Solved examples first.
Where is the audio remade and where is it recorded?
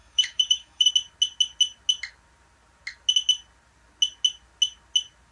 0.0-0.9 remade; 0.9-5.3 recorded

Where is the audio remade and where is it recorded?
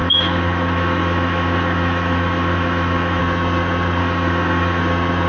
0.0-3.2 remade; 3.2-4.0 recorded; 4.0-4.8 remade; 4.8-5.3 recorded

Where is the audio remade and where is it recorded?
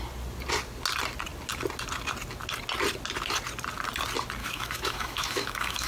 0.0-4.4 recorded; 4.4-5.9 remade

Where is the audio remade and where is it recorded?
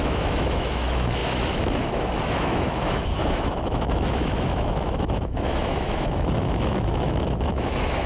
0.0-8.1 remade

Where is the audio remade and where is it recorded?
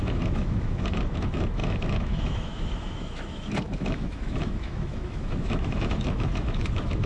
0.0-7.1 remade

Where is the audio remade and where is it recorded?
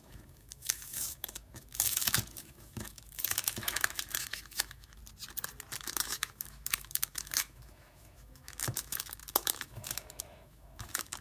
0.0-5.0 remade; 5.0-5.8 recorded; 5.8-11.2 remade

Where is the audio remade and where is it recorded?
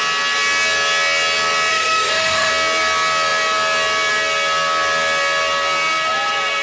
0.0-1.7 recorded; 1.7-2.5 remade; 2.5-6.6 recorded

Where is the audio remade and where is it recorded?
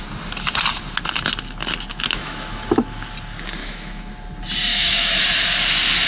0.0-1.9 recorded; 1.9-2.8 remade; 2.8-3.6 recorded; 3.6-4.1 remade; 4.1-4.7 recorded; 4.7-5.2 remade; 5.2-6.1 recorded